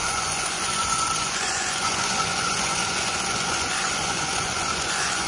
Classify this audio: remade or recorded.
remade